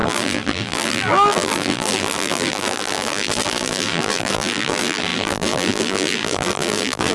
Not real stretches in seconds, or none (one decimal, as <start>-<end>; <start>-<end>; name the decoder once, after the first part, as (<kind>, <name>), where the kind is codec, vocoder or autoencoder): 0.0-7.1 (vocoder, BigVGAN v2)